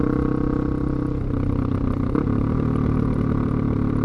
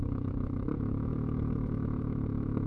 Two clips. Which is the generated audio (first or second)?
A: second